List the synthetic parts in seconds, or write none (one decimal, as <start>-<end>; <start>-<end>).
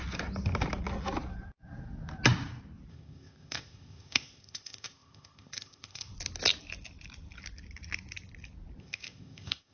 2.9-6.1; 8.8-9.7